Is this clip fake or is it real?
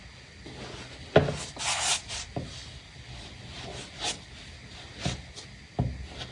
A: real